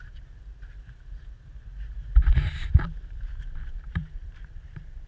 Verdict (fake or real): fake